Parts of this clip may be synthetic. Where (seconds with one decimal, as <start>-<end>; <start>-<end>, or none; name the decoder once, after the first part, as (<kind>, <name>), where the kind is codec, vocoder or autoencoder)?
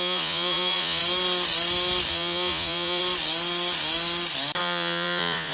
0.0-1.0 (vocoder, Vocos); 2.1-3.0; 4.6-5.5